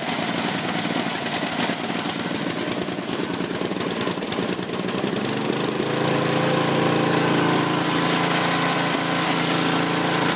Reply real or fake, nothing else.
real